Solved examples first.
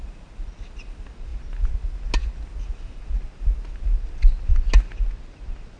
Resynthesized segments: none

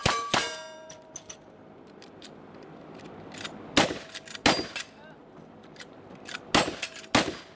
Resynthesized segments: 0.0-3.1 (vocoder, BigVGAN v2); 5.2-6.4

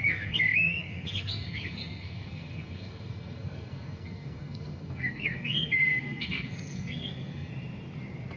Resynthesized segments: 0.0-7.5 (codec, SNAC)

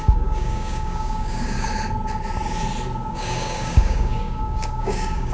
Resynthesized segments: 0.0-1.7 (codec, DAC); 3.1-5.3

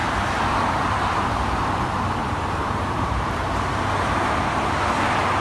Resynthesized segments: 0.0-1.1 (vocoder, BigVGAN v2); 2.2-4.1

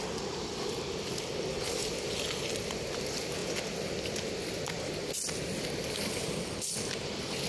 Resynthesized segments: none

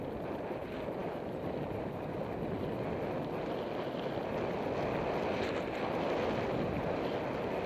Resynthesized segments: none